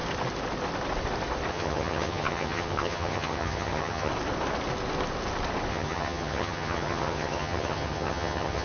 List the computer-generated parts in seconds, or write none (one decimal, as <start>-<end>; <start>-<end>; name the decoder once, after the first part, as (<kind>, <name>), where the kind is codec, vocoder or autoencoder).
1.5-4.1 (vocoder, HiFi-GAN); 5.7-8.6